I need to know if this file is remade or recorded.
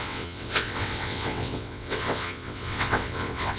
remade